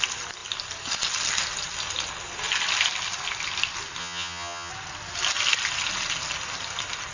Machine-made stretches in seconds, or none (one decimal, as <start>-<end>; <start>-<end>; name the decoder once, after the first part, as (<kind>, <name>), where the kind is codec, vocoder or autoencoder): 4.0-4.7 (vocoder, HiFi-GAN)